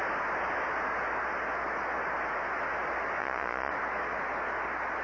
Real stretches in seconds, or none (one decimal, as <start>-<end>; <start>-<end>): 0.0-3.2; 3.7-5.0